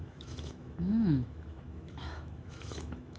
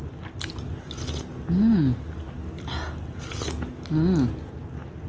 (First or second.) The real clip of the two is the second